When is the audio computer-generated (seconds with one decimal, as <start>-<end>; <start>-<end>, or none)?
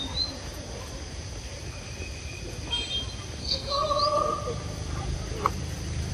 3.4-3.9